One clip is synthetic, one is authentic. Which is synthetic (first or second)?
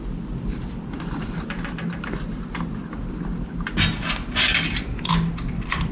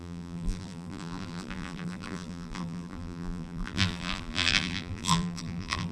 second